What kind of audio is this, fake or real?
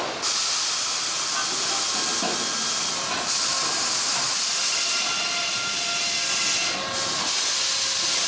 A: real